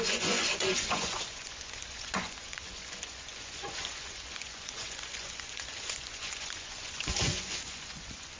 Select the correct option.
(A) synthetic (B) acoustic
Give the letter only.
A